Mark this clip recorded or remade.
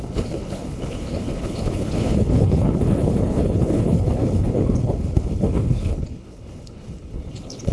remade